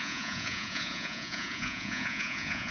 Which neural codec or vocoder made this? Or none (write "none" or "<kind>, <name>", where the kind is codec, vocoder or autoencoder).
vocoder, Vocos